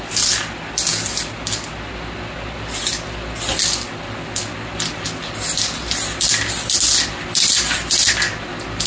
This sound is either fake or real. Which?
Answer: real